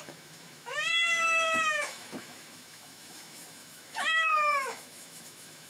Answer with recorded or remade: remade